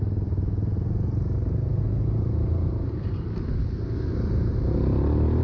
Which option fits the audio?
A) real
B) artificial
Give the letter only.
A